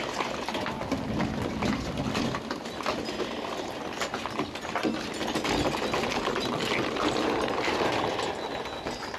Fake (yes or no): no